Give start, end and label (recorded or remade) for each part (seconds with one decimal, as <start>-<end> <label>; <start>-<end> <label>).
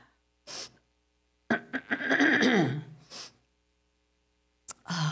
0.0-5.1 recorded